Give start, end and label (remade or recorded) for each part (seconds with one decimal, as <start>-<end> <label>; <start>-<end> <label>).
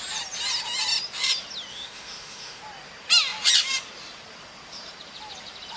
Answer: 0.0-1.7 recorded; 1.7-2.6 remade; 2.6-5.8 recorded